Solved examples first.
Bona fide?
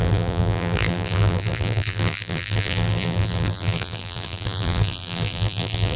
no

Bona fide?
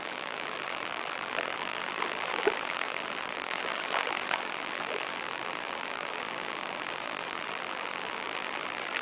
no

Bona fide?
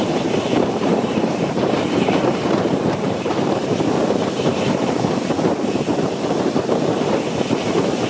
no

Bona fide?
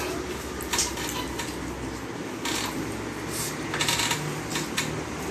yes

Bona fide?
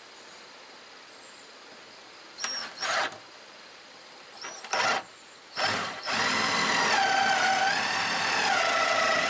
yes